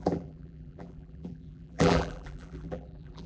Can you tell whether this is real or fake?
fake